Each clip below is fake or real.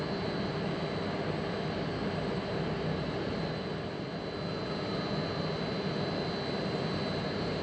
real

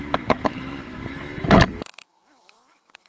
fake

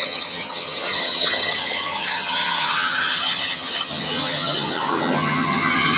fake